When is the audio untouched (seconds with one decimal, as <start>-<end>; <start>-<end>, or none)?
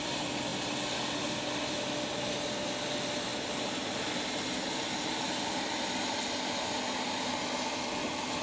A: 0.0-8.4